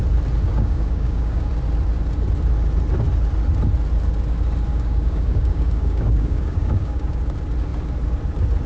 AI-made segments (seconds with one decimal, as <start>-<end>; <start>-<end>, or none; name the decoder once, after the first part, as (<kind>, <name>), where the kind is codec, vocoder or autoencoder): 0.5-1.5 (codec, DAC); 4.7-7.2